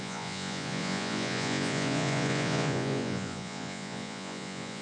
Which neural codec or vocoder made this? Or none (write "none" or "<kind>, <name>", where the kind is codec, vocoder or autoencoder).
vocoder, Vocos